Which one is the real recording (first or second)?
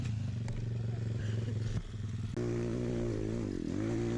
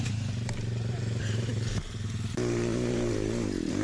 first